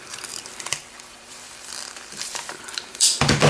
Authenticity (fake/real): fake